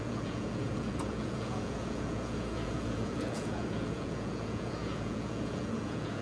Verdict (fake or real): fake